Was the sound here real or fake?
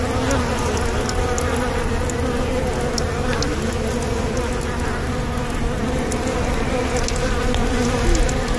real